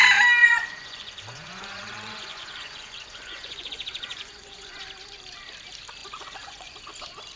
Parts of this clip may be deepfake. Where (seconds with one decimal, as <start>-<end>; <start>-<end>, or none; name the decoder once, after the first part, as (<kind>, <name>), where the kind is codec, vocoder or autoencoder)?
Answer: 0.4-4.8 (vocoder, Vocos); 6.0-6.8